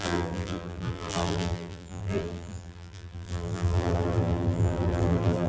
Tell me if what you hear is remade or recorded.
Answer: remade